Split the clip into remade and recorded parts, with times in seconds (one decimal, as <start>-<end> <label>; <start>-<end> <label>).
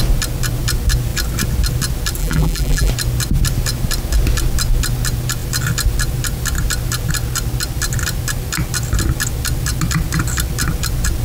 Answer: 0.0-2.2 recorded; 2.2-2.9 remade; 2.9-11.2 recorded